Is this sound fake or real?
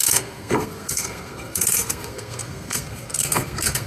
fake